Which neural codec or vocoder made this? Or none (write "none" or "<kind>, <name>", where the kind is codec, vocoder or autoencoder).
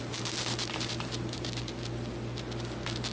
none